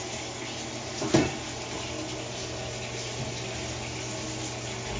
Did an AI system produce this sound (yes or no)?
no